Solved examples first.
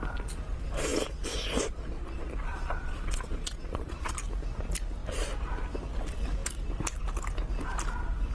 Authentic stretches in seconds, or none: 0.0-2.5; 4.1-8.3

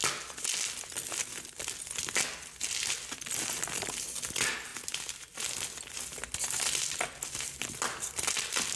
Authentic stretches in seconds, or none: 0.0-8.8

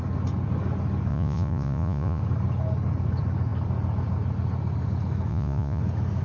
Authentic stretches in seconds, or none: 0.0-1.1; 2.2-5.3; 5.8-6.2

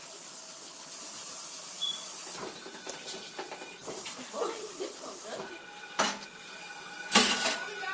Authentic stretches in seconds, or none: 0.0-2.4; 2.9-3.8; 5.6-7.9

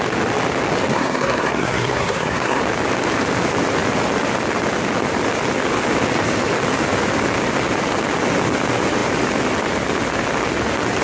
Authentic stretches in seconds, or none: 0.0-0.9; 2.6-11.0